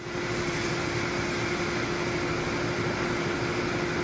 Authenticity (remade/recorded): recorded